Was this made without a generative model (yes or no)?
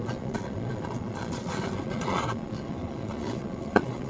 no